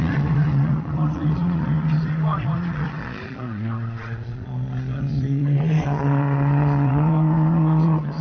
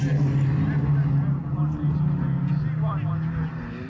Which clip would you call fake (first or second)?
first